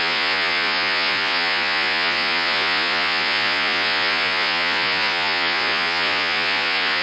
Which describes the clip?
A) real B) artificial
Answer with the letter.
B